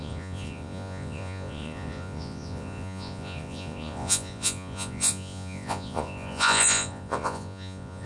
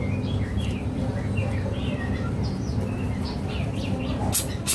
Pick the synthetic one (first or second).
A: first